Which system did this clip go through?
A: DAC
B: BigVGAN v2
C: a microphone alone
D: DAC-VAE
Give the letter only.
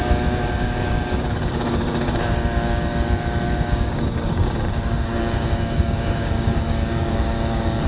A